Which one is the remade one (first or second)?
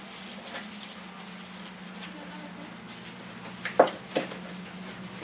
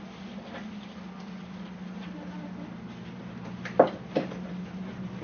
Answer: second